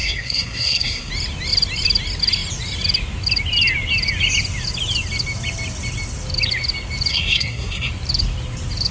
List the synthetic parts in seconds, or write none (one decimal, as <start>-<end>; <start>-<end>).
0.0-1.1; 7.1-7.9